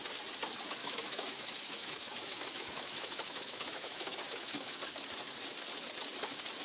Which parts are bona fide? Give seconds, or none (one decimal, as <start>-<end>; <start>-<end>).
0.0-0.8; 4.8-6.6

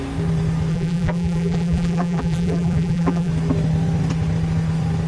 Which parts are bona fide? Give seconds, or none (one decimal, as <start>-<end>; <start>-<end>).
0.0-0.7; 3.3-5.1

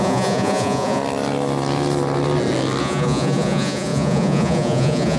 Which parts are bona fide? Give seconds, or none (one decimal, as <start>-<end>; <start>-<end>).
1.0-2.8

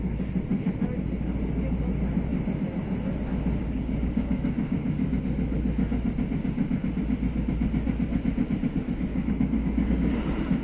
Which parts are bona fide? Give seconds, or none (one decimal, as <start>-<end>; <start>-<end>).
0.0-3.6; 5.2-9.1; 10.1-10.6

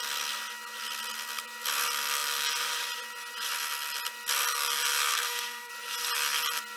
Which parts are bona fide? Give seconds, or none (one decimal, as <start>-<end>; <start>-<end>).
0.0-5.1; 5.7-6.8